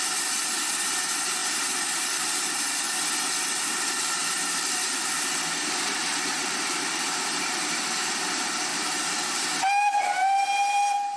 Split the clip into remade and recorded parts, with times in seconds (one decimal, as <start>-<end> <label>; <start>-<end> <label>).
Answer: 0.0-1.4 recorded; 1.4-2.6 remade; 2.6-4.2 recorded; 4.2-8.1 remade; 8.1-8.7 recorded; 8.7-9.3 remade; 9.3-11.2 recorded